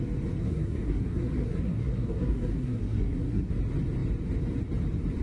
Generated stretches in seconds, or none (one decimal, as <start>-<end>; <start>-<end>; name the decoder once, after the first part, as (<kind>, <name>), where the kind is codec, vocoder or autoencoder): 0.4-3.5 (codec, SNAC)